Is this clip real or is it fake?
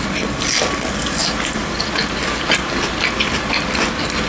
real